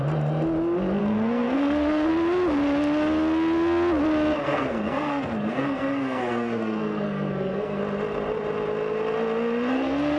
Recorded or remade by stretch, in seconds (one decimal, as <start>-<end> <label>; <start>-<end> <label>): 0.0-1.0 recorded; 1.0-2.1 remade; 2.1-4.4 recorded; 4.4-7.8 remade; 7.8-9.7 recorded; 9.7-10.2 remade